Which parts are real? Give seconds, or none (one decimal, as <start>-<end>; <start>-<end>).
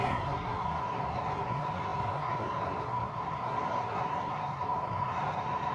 none